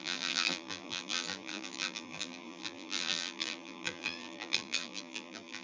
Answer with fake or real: fake